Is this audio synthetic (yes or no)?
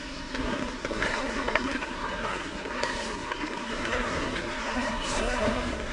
yes